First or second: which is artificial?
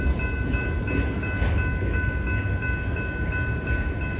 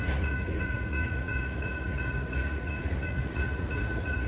second